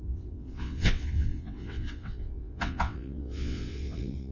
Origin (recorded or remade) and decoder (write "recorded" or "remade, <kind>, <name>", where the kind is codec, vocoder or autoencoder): remade, vocoder, WaveNeXt